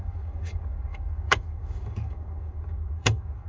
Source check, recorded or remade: remade